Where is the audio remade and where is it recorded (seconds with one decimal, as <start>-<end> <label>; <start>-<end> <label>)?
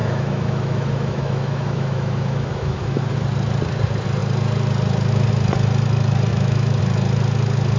0.0-3.1 remade; 3.1-6.3 recorded; 6.3-6.8 remade; 6.8-7.8 recorded